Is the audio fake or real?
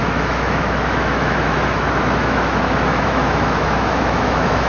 fake